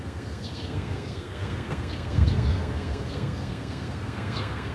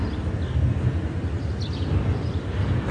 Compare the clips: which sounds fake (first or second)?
first